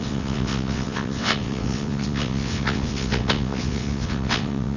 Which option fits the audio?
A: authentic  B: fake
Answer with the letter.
B